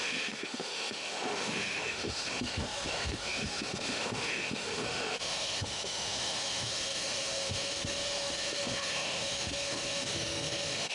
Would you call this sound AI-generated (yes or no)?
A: yes